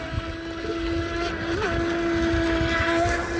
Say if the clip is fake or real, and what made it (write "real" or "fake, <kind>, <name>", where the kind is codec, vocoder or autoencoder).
real